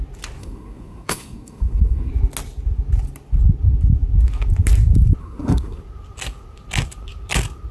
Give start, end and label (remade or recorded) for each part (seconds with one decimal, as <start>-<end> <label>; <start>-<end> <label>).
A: 0.0-0.4 recorded; 0.4-2.1 remade; 2.1-5.2 recorded; 5.2-5.8 remade; 5.8-7.7 recorded